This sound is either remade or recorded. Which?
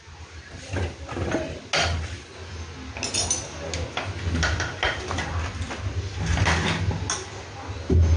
recorded